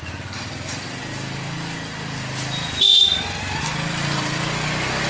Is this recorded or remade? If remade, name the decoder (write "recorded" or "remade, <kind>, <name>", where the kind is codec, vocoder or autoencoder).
recorded